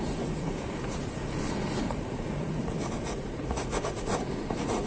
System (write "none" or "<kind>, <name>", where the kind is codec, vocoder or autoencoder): vocoder, Vocos